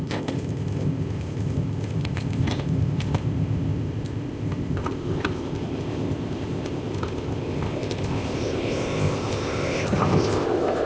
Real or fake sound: fake